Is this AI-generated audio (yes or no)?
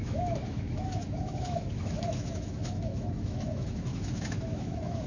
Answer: yes